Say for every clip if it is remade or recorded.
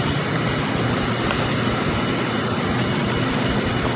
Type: recorded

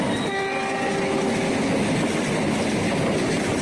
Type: recorded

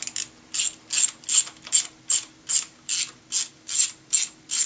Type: recorded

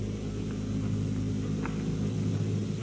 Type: recorded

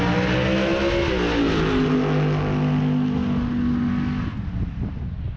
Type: recorded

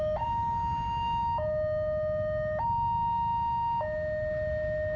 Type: recorded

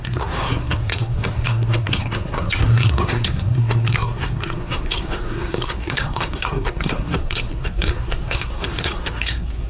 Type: remade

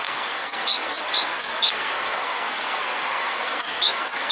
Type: remade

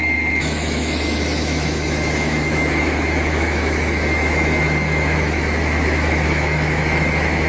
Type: remade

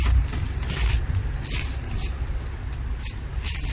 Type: recorded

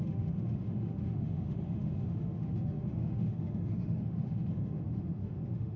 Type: remade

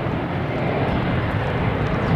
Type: recorded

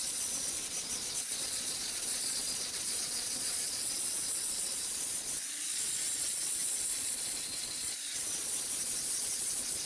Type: remade